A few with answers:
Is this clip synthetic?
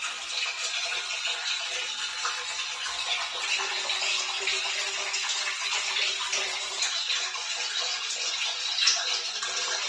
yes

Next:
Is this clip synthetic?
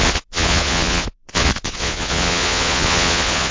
yes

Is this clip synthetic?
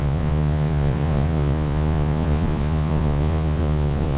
yes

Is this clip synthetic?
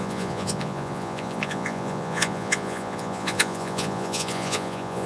yes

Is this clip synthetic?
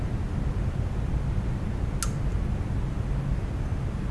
no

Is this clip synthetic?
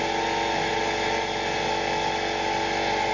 no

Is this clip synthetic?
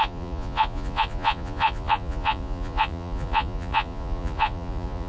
yes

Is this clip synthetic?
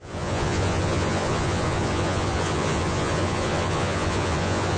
yes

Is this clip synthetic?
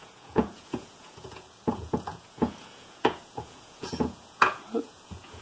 yes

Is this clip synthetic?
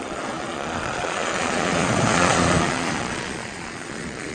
yes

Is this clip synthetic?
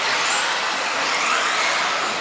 no